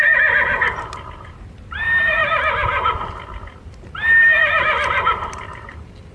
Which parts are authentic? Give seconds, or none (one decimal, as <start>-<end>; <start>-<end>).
2.7-4.4

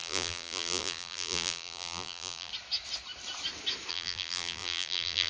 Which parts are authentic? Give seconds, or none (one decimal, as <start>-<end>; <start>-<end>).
2.5-3.9

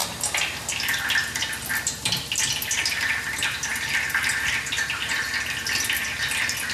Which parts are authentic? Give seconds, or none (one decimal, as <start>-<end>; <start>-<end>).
0.0-6.7

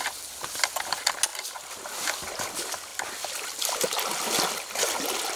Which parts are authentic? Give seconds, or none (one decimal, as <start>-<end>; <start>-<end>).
0.0-5.4

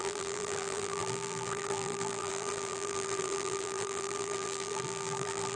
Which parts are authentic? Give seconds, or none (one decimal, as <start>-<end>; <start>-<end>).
none

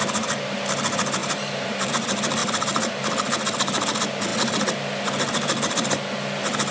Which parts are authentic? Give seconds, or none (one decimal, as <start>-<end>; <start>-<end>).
0.0-1.2; 1.9-6.7

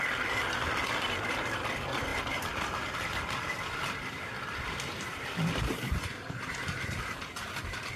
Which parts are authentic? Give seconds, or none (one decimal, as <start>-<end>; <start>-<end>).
0.0-2.1; 6.0-8.0

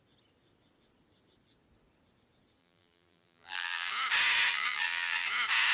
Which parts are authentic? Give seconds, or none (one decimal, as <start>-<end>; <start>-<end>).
0.0-2.6; 3.9-4.5; 5.3-5.7